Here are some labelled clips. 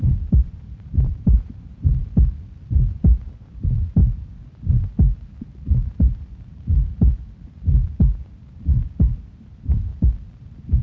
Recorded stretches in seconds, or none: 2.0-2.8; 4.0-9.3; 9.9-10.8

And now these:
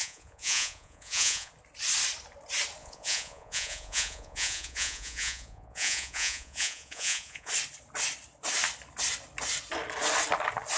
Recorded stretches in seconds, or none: 1.5-2.8; 7.5-10.8

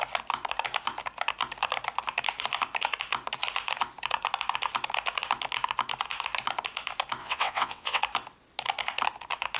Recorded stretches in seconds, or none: 0.0-7.2; 8.0-9.6

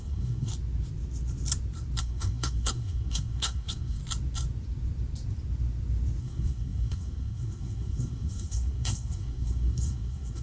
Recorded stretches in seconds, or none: 0.5-2.0; 4.0-6.2